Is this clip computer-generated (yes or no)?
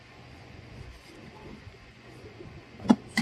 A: yes